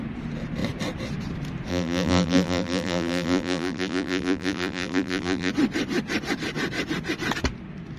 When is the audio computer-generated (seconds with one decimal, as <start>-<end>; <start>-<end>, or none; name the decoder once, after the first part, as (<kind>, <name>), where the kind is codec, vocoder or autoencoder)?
1.7-5.5 (vocoder, BigVGAN v2)